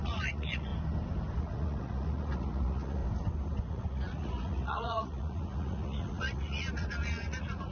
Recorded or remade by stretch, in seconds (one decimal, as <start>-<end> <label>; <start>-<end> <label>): 0.0-0.7 remade; 0.7-1.4 recorded; 1.4-3.0 remade; 3.0-3.7 recorded; 3.7-7.7 remade